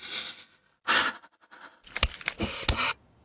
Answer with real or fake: real